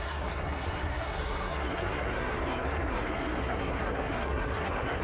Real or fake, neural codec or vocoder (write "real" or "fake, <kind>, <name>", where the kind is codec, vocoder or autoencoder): fake, codec, SNAC